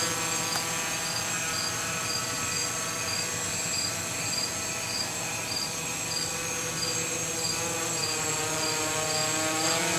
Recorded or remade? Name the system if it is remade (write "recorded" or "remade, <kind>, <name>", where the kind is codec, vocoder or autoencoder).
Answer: recorded